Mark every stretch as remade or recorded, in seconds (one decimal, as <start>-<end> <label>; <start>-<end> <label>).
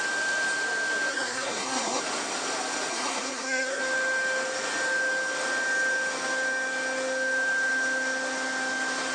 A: 0.0-1.1 recorded; 1.1-2.0 remade; 2.0-2.9 recorded; 2.9-3.8 remade; 3.8-9.1 recorded